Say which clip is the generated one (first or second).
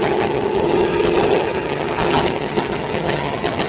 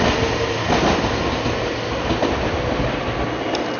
first